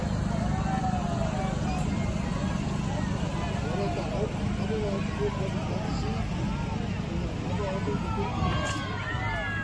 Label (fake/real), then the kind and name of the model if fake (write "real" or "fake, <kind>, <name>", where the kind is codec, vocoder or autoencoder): real